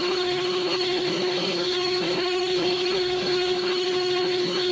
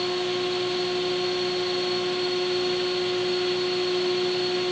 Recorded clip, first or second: second